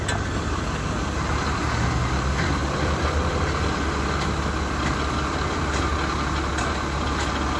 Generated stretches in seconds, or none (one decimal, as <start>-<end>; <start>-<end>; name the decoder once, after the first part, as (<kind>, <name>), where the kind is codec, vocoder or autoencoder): 2.6-3.3 (vocoder, BigVGAN v2)